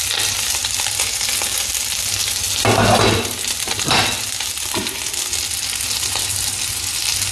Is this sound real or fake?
real